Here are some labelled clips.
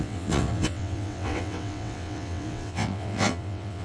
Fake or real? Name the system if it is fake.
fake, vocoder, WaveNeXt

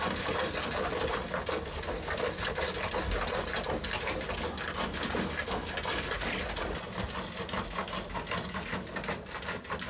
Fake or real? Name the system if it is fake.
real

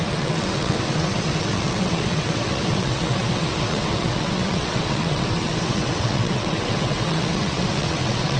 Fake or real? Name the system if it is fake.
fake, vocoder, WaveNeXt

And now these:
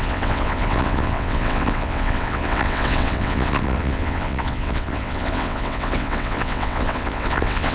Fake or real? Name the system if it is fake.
fake, vocoder, WaveNeXt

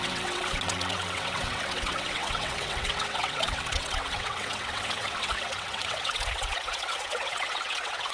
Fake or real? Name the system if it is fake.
fake, vocoder, WaveNeXt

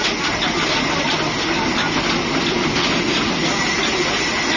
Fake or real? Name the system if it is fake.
real